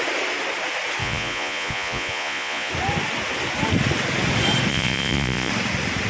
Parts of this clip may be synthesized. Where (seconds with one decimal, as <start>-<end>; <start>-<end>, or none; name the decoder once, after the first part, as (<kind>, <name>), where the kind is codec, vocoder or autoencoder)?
1.0-2.7 (vocoder, Vocos); 4.7-5.5